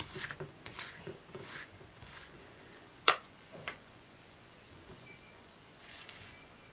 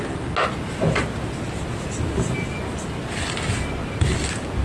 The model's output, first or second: first